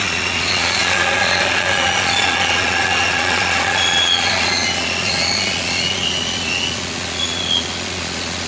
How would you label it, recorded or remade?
remade